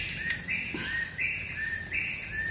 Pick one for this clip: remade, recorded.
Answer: recorded